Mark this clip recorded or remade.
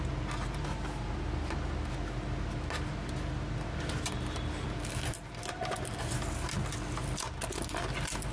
recorded